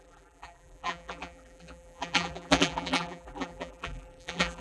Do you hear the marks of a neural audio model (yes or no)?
yes